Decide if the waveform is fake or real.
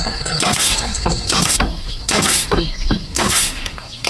fake